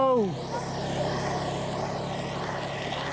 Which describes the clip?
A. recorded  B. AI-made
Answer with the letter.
A